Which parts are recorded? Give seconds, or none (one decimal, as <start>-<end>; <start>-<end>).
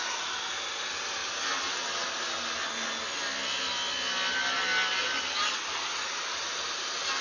0.0-7.2